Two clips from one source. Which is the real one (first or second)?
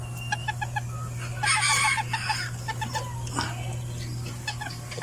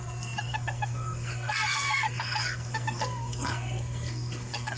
first